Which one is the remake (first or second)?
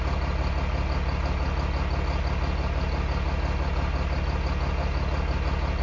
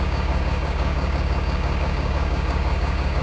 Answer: second